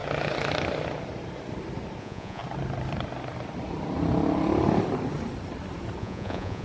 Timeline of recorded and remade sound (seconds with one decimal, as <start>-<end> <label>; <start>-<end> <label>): 0.0-2.0 recorded; 2.0-2.4 remade; 2.4-6.0 recorded; 6.0-6.6 remade